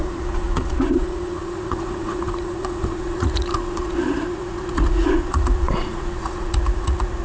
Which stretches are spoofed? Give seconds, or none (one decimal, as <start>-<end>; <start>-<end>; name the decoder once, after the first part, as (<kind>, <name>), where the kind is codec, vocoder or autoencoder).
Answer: 0.0-7.2 (vocoder, Vocos)